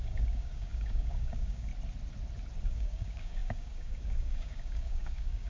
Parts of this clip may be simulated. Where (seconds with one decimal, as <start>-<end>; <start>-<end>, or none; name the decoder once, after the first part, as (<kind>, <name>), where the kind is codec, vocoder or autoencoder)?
0.0-1.7 (codec, DAC); 2.6-5.5